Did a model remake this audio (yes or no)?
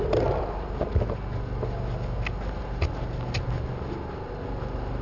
no